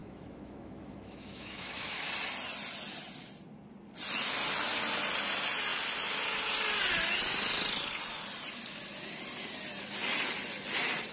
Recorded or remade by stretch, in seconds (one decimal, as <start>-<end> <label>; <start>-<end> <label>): 0.0-2.1 remade; 2.1-11.1 recorded